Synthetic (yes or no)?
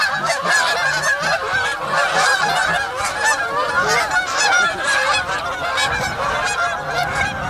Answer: no